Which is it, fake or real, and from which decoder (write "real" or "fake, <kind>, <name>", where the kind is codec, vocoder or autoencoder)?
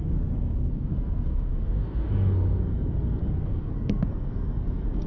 fake, codec, SNAC